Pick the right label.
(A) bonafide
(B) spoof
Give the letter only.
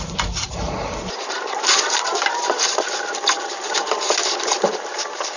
B